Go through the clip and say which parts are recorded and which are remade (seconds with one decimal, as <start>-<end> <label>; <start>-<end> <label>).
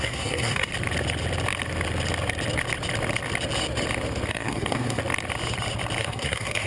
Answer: 0.0-0.7 remade; 0.7-4.3 recorded; 4.3-5.0 remade; 5.0-6.0 recorded; 6.0-6.7 remade